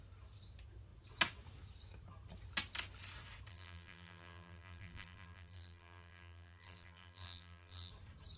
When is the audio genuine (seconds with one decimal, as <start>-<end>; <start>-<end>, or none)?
0.0-3.5; 7.9-8.4